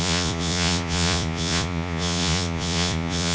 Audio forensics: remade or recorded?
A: remade